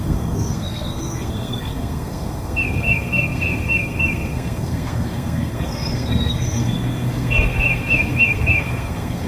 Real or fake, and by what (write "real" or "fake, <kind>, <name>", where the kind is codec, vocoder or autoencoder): fake, codec, SNAC